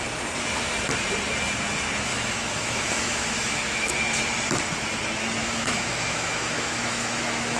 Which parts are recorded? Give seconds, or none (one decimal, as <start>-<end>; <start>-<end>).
0.0-2.1; 3.9-5.4